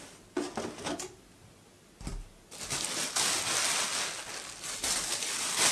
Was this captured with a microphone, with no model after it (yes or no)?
yes